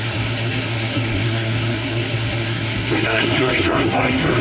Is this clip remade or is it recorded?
remade